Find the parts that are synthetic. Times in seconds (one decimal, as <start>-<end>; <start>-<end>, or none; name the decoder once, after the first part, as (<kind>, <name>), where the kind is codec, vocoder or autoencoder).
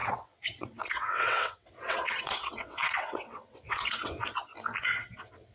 0.0-4.2 (vocoder, WaveNeXt); 4.8-5.5